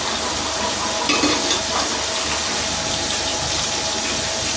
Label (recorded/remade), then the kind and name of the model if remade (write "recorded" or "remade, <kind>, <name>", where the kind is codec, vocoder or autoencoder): recorded